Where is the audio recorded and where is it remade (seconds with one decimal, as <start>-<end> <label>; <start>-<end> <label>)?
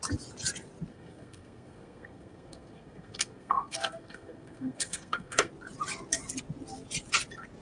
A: 0.0-0.9 recorded; 0.9-5.5 remade; 5.5-7.6 recorded